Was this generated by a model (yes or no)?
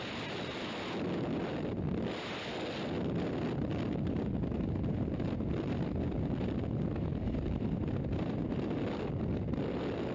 no